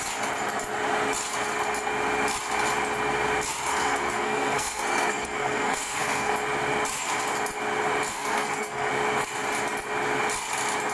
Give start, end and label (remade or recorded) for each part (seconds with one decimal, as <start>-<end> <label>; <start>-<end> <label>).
0.0-3.7 recorded; 3.7-6.3 remade; 6.3-8.1 recorded; 8.1-8.9 remade; 8.9-10.9 recorded